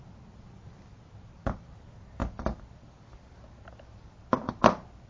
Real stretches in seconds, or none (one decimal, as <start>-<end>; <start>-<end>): 0.0-5.1